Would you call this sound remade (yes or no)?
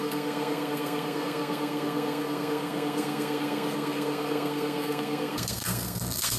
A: yes